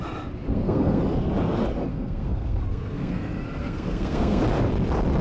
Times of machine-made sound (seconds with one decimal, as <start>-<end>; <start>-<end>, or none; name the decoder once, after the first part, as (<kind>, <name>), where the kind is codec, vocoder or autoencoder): 0.5-1.0 (codec, SNAC); 1.9-3.2; 3.6-4.4